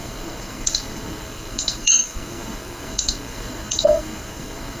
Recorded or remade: remade